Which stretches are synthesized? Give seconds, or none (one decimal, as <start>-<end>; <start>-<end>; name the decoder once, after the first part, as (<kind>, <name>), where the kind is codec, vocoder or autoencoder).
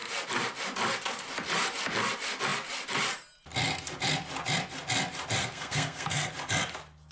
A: 5.4-6.3 (codec, SNAC)